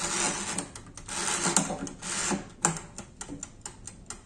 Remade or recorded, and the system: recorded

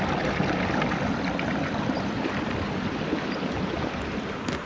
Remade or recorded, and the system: recorded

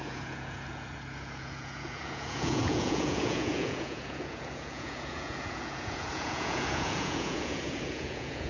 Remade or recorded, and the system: remade, vocoder, Vocos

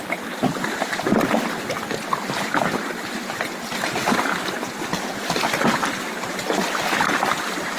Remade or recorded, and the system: recorded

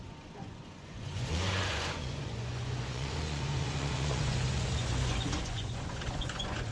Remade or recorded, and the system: remade, vocoder, Vocos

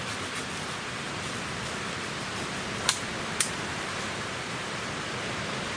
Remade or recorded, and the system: recorded